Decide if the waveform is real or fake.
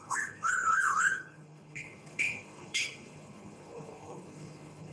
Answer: fake